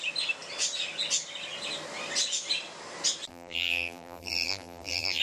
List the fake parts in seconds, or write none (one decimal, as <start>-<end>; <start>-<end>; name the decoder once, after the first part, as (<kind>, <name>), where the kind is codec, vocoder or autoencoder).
3.3-5.2 (vocoder, BigVGAN v2)